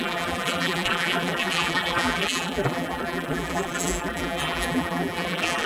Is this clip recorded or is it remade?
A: remade